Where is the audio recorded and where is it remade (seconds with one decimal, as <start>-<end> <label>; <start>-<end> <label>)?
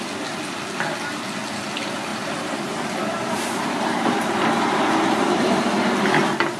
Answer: 0.0-2.1 recorded; 2.1-5.5 remade; 5.5-6.6 recorded